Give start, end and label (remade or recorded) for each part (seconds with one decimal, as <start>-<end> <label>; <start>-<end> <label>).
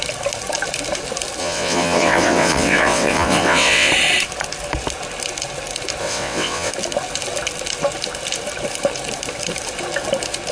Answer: 0.0-1.4 recorded; 1.4-3.9 remade; 3.9-6.0 recorded; 6.0-6.7 remade; 6.7-10.5 recorded